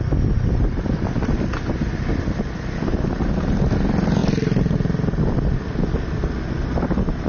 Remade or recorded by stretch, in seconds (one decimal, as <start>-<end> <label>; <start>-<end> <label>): 0.0-7.3 recorded